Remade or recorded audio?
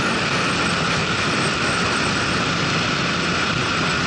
recorded